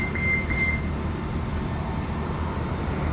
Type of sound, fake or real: real